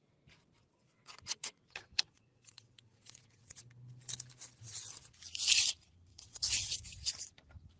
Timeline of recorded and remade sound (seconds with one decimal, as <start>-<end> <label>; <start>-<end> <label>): 0.0-0.6 recorded; 0.6-3.6 remade; 3.6-6.1 recorded; 6.1-7.1 remade; 7.1-7.8 recorded